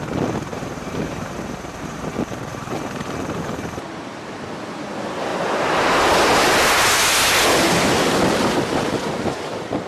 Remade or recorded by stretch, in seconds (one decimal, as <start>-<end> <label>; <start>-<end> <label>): 0.0-0.5 recorded; 0.5-2.7 remade; 2.7-9.9 recorded